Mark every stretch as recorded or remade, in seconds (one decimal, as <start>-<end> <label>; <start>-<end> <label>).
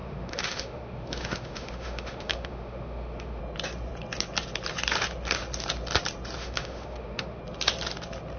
0.0-3.4 remade; 3.4-6.4 recorded; 6.4-7.4 remade; 7.4-8.4 recorded